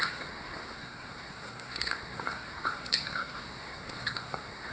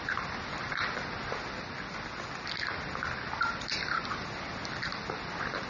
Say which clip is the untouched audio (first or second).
second